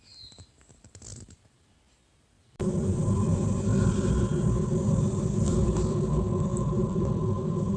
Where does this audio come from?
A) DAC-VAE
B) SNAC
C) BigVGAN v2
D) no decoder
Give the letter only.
C